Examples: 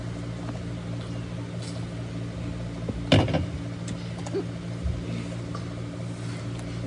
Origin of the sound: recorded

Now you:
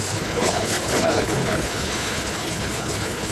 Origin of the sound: remade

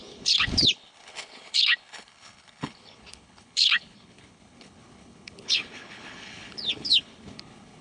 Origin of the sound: remade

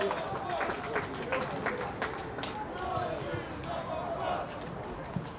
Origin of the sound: recorded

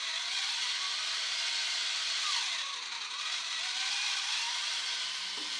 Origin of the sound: recorded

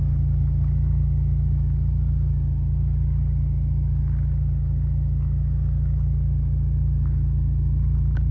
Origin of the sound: recorded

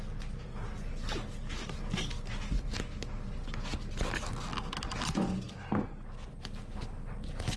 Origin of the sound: recorded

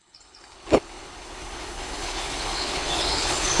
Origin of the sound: remade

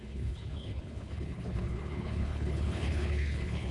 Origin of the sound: remade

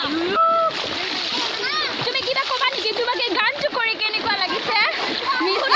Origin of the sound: recorded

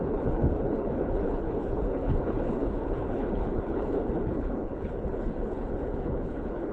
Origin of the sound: remade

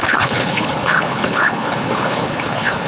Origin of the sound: remade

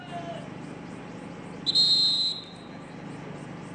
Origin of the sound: recorded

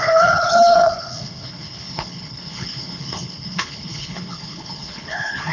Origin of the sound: remade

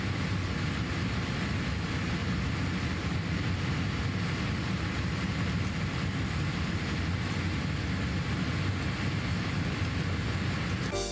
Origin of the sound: recorded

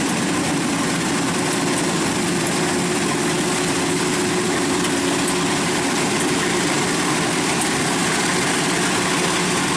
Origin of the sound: recorded